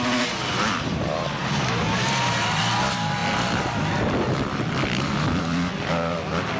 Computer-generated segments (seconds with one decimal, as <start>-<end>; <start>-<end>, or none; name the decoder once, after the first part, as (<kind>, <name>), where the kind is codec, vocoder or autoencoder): none